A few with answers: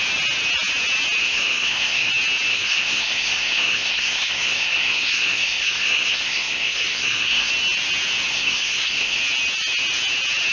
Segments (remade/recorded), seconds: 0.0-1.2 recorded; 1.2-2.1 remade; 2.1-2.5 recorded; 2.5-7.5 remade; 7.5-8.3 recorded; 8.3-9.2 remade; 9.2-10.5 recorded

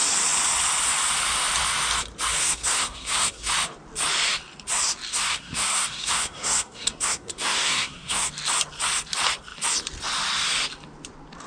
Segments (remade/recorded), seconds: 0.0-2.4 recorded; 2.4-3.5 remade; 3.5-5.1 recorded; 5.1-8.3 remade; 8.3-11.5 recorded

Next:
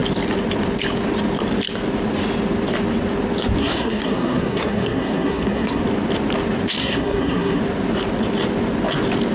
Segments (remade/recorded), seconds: 0.0-3.6 recorded; 3.6-5.8 remade; 5.8-6.8 recorded; 6.8-7.6 remade; 7.6-9.3 recorded

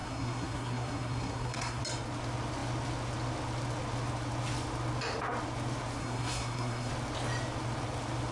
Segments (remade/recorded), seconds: 0.0-1.8 remade; 1.8-6.0 recorded; 6.0-6.9 remade; 6.9-8.3 recorded